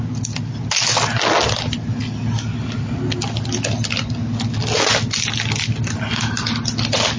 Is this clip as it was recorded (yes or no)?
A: yes